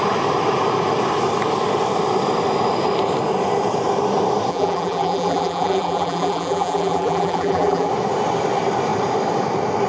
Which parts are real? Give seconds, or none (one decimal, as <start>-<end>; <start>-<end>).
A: 0.0-4.5; 7.9-9.9